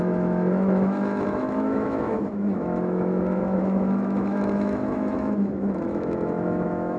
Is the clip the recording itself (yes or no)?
no